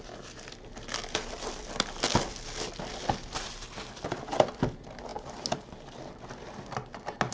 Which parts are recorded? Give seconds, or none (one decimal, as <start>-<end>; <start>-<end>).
0.0-7.3